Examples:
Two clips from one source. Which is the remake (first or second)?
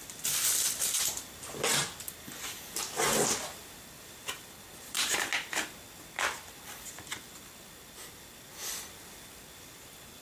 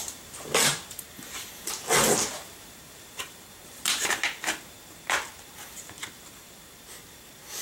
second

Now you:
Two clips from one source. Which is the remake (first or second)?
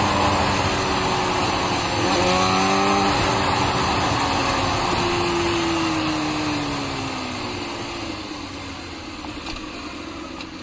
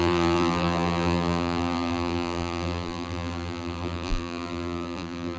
second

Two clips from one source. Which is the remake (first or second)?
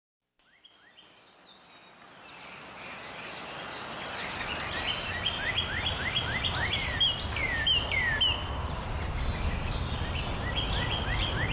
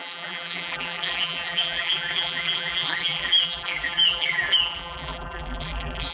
second